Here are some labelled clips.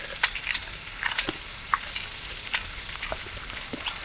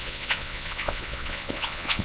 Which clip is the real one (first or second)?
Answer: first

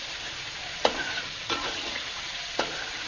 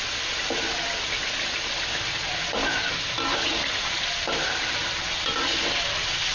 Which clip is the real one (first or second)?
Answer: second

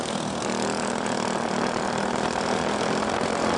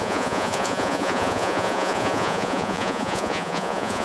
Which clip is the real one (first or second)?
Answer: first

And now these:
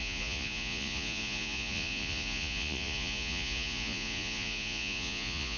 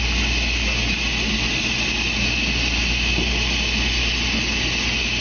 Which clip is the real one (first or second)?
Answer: second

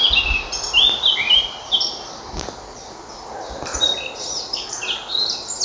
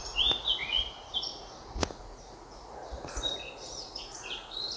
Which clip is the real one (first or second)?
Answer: first